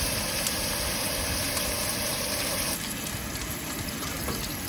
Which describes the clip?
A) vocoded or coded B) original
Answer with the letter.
B